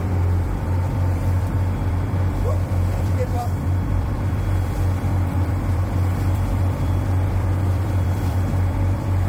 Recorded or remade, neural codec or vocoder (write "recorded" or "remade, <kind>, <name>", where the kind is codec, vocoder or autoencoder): remade, vocoder, BigVGAN v2